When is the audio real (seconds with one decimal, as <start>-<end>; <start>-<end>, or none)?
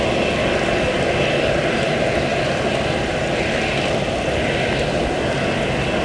0.0-6.0